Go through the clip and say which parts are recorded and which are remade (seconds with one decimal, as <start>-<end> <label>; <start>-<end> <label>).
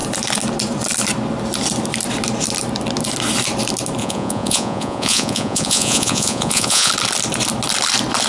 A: 0.0-4.0 recorded; 4.0-6.9 remade; 6.9-8.3 recorded